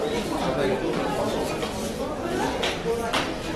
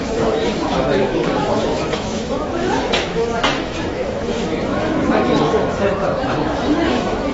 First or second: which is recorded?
first